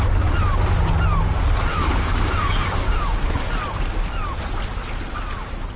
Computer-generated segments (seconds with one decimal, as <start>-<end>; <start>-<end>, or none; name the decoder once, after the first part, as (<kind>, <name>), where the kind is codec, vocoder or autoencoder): 1.7-3.5 (codec, DAC)